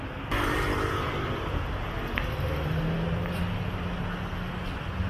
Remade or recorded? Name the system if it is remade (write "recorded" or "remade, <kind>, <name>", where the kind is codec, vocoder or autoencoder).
recorded